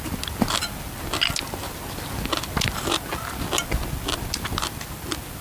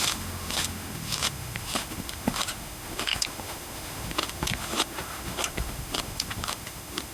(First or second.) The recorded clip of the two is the first